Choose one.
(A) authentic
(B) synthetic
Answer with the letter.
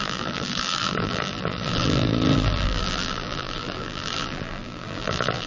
B